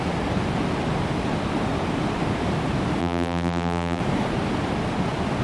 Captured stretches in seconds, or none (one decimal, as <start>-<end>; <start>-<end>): 0.0-3.0; 4.0-5.4